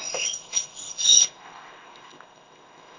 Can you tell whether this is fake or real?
fake